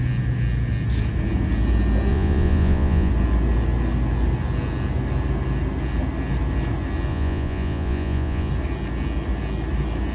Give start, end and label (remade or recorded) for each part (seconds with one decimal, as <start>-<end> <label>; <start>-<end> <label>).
0.0-2.1 recorded; 2.1-3.1 remade; 3.1-7.1 recorded; 7.1-8.5 remade; 8.5-10.1 recorded